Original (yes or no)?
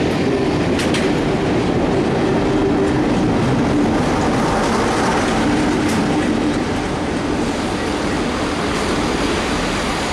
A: yes